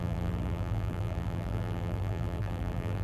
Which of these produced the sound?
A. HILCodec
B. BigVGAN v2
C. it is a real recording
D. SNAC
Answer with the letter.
B